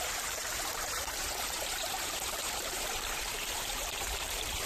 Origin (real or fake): fake